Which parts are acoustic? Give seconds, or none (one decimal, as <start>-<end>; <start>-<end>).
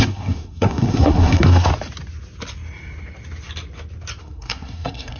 1.7-4.2